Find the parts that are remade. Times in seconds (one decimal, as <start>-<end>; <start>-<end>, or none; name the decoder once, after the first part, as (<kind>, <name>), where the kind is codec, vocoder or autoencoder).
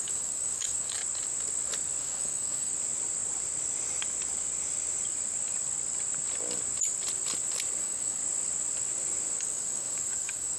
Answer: 0.0-1.0 (codec, DAC); 2.0-2.7; 7.8-8.2; 9.4-10.6